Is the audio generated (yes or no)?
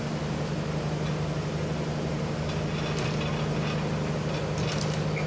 no